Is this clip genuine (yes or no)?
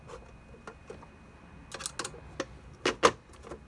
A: yes